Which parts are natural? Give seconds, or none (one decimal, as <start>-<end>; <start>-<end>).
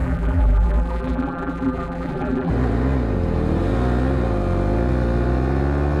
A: 2.5-6.0